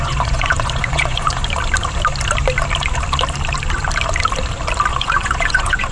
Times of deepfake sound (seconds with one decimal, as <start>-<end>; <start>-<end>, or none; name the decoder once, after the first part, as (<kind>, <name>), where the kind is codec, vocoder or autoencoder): 0.0-1.4 (vocoder, Vocos); 4.9-5.9